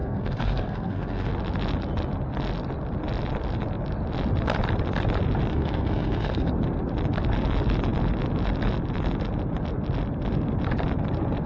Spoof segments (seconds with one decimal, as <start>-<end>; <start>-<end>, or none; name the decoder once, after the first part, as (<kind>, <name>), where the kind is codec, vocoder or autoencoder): 0.0-1.3 (codec, SNAC); 5.5-6.5